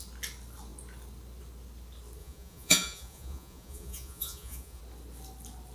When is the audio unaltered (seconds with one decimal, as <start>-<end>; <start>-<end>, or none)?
0.0-2.2; 4.8-5.7